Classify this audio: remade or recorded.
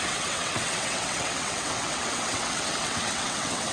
remade